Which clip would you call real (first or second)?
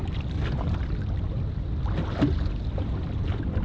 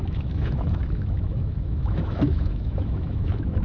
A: first